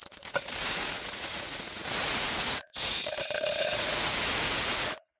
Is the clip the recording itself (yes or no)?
no